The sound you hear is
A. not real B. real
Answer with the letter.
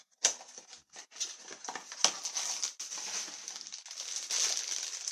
B